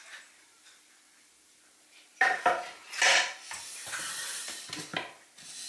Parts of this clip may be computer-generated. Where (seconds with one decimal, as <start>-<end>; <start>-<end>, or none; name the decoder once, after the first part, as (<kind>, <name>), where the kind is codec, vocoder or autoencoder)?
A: 3.1-3.8 (vocoder, BigVGAN v2)